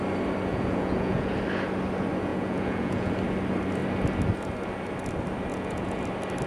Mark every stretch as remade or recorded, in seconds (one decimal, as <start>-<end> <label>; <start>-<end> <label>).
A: 0.0-0.5 recorded; 0.5-1.3 remade; 1.3-2.3 recorded; 2.3-3.1 remade; 3.1-5.5 recorded; 5.5-6.0 remade; 6.0-6.5 recorded